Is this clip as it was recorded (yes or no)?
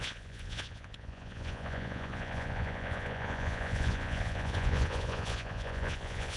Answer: no